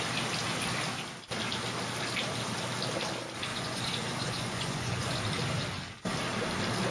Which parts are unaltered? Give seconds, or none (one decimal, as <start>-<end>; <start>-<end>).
0.0-3.5; 5.2-6.9